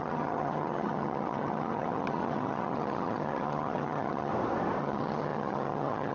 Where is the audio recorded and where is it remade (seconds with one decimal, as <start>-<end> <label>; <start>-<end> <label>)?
0.0-4.3 remade; 4.3-4.8 recorded; 4.8-6.1 remade